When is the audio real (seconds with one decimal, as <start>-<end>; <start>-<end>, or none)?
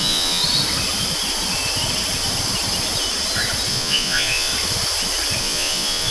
0.4-3.7; 4.5-5.4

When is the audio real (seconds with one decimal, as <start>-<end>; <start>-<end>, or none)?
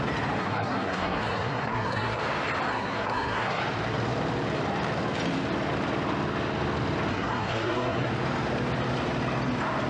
0.0-0.4; 2.2-2.7; 3.6-7.1; 8.1-9.9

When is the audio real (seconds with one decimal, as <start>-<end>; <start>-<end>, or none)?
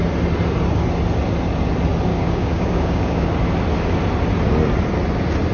0.0-2.1; 3.3-5.5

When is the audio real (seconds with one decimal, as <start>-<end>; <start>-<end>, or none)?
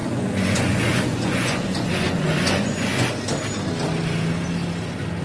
3.1-5.2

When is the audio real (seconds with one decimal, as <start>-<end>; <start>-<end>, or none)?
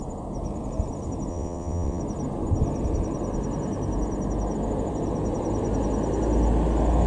0.0-1.3; 2.0-7.1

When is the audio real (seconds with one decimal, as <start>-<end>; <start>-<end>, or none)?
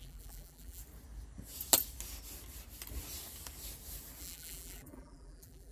0.8-4.2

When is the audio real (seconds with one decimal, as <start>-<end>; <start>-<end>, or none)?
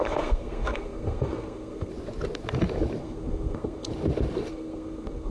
1.9-3.0; 3.9-4.5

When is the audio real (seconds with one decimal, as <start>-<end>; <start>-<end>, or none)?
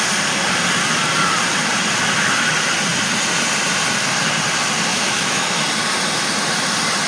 0.0-4.9; 5.6-7.1